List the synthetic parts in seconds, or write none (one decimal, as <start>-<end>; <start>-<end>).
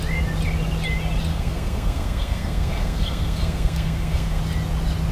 1.3-4.4